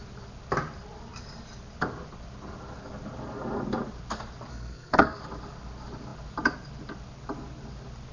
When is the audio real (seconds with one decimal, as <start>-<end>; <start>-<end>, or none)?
0.0-4.5; 5.2-8.1